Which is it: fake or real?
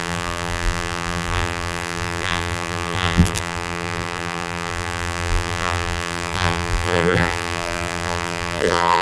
fake